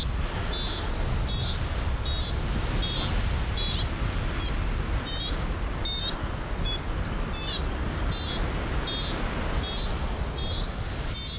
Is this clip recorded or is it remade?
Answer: recorded